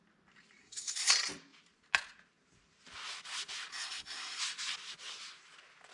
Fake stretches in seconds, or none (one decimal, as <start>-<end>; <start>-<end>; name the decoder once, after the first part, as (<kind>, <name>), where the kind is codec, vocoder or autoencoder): 0.6-1.1 (codec, SNAC); 3.7-4.4